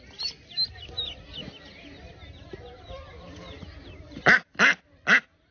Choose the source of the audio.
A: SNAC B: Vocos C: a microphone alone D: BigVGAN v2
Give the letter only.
C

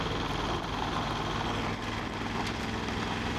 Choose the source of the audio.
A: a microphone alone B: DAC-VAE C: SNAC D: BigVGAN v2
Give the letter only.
A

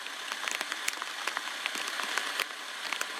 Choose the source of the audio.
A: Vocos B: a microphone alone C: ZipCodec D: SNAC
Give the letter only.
B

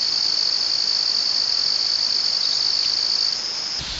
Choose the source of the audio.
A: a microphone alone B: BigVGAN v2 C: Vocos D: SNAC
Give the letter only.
A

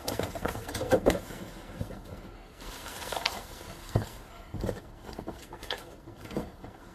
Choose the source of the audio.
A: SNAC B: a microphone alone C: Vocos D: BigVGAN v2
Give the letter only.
A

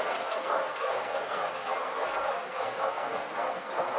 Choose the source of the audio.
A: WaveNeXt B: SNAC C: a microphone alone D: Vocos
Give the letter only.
B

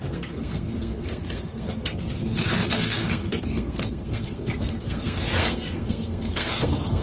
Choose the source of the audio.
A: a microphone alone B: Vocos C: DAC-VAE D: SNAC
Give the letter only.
D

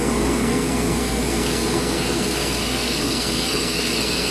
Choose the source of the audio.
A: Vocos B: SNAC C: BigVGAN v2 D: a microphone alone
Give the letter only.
B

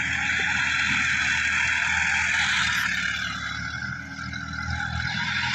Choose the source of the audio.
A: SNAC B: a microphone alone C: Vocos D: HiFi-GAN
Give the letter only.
B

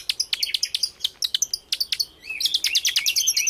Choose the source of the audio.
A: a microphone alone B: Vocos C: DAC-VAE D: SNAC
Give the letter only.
A